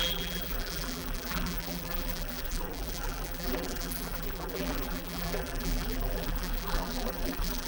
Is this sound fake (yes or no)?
yes